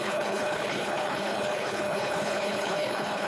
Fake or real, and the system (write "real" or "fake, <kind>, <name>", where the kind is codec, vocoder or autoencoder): fake, codec, HILCodec